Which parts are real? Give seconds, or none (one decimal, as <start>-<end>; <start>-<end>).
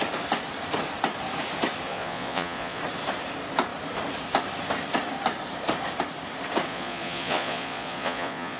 0.0-1.9; 2.8-6.7